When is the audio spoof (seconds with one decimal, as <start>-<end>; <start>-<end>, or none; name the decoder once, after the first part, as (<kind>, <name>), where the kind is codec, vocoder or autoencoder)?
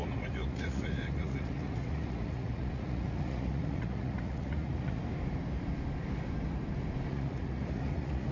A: 0.0-5.0 (vocoder, Vocos); 7.1-8.3